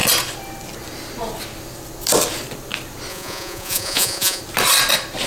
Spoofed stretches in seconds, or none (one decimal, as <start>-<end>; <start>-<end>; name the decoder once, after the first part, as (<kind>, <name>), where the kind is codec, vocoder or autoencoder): 3.1-4.4 (vocoder, Vocos)